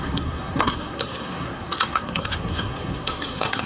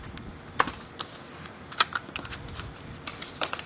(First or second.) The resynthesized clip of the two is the first